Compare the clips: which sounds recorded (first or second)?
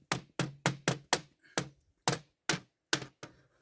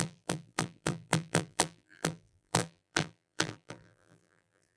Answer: first